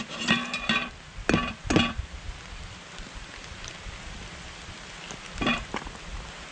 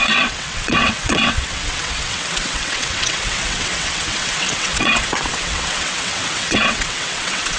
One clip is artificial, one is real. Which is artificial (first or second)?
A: second